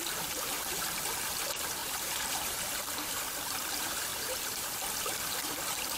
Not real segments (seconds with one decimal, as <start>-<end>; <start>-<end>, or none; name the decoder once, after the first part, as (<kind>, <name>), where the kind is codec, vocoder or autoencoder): 1.8-3.1 (vocoder, BigVGAN v2); 4.1-4.8